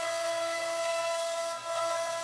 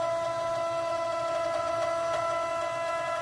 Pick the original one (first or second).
second